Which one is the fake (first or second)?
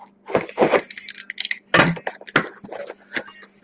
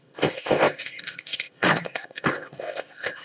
second